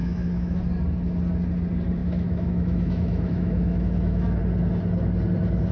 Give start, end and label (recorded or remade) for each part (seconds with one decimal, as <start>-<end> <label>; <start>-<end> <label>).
0.0-0.6 remade; 0.6-2.0 recorded; 2.0-4.4 remade; 4.4-5.7 recorded